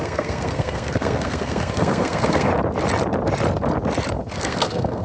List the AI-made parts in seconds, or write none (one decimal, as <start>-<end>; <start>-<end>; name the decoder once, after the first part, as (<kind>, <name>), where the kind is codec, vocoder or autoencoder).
0.0-2.5 (codec, SNAC); 4.1-5.0